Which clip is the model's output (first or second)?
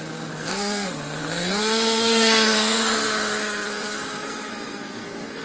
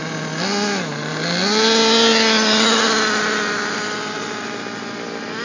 first